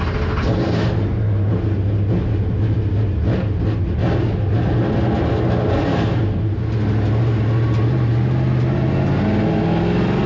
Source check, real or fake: real